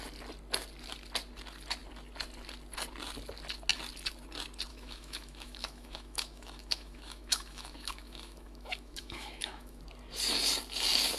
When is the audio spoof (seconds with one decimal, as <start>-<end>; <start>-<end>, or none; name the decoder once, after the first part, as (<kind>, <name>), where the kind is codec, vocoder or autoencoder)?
4.7-9.8 (autoencoder, DAC-VAE)